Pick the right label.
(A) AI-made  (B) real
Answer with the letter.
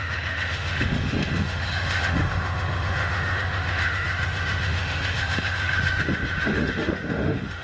A